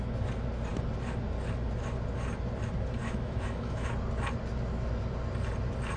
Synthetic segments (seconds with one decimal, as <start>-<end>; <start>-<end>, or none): 3.0-3.9